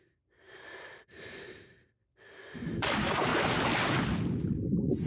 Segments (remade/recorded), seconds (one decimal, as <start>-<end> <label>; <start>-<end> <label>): 0.0-2.0 remade; 2.0-2.7 recorded; 2.7-3.3 remade; 3.3-5.1 recorded